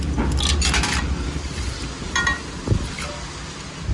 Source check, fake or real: real